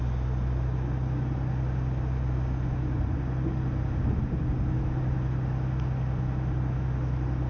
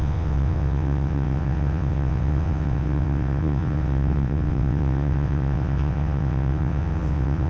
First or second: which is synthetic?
second